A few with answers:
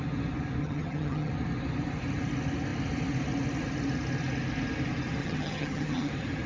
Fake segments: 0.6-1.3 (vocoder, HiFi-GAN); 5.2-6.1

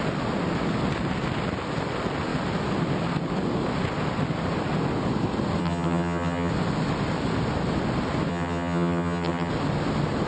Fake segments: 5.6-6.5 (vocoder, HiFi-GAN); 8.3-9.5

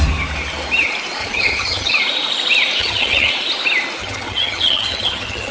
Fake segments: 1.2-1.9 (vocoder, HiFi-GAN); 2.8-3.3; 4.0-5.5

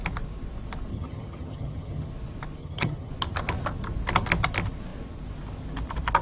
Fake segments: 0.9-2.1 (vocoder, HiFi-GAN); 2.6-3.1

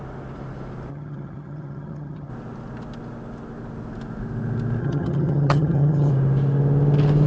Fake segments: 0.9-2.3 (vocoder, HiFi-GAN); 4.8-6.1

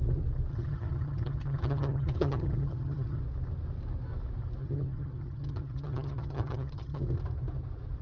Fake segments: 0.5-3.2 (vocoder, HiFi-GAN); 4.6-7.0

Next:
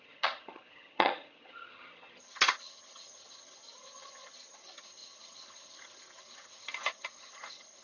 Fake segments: 0.0-7.8 (vocoder, HiFi-GAN)